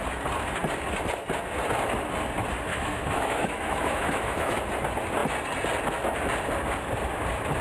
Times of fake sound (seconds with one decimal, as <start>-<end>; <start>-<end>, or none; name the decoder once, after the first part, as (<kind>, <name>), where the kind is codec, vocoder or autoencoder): 2.7-4.6 (autoencoder, DAC-VAE)